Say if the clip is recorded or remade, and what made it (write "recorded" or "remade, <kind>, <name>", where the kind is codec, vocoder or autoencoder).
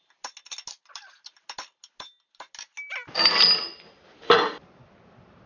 recorded